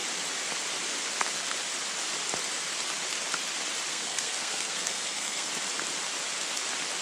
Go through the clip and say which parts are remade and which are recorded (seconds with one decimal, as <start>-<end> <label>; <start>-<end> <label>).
0.0-3.9 recorded; 3.9-5.5 remade; 5.5-7.0 recorded